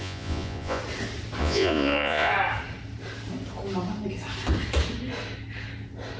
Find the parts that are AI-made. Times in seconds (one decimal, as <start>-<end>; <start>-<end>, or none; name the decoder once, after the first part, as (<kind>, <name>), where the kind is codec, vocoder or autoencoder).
0.0-0.8 (vocoder, Vocos); 1.4-2.3